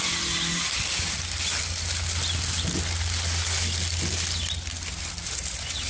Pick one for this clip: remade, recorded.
recorded